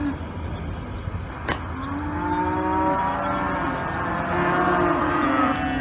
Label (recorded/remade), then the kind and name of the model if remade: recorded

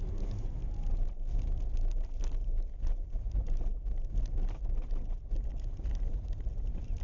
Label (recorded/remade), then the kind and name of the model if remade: recorded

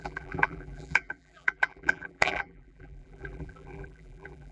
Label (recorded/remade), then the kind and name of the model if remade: remade, vocoder, BigVGAN v2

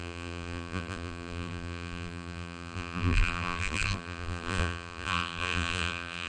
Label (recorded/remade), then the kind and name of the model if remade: remade, vocoder, BigVGAN v2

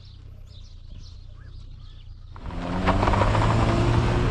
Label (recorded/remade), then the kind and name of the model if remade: recorded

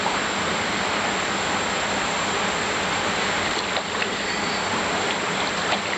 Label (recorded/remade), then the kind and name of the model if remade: remade, vocoder, BigVGAN v2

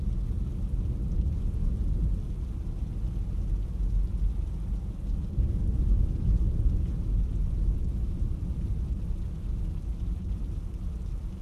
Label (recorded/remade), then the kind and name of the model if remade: recorded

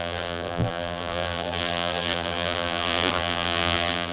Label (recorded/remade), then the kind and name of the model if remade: remade, vocoder, BigVGAN v2